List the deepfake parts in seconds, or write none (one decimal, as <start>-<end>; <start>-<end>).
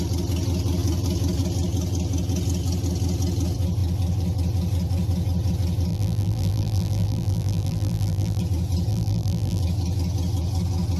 5.9-8.4; 8.9-9.6